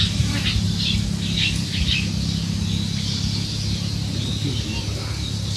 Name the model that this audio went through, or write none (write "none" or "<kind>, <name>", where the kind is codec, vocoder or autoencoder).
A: none